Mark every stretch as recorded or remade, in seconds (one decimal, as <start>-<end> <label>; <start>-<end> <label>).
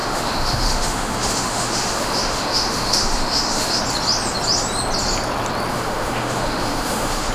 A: 0.0-3.8 remade; 3.8-5.7 recorded; 5.7-7.3 remade